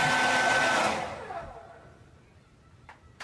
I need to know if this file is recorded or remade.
recorded